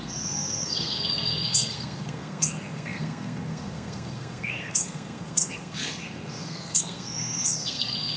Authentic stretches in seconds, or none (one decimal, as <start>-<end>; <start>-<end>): none

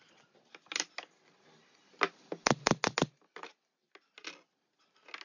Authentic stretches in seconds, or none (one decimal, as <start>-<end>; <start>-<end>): 0.0-5.2

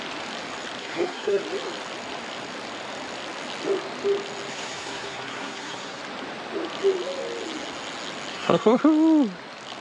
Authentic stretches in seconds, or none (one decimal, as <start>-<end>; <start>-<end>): 0.0-0.8; 1.4-4.5; 6.0-8.3; 8.8-9.8

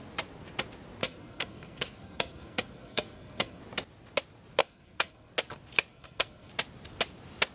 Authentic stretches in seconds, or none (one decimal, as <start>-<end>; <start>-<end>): 0.0-1.0; 3.6-4.6; 5.3-5.9; 6.5-7.5